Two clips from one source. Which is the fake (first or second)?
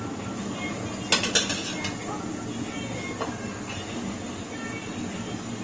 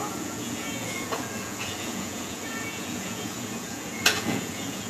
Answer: second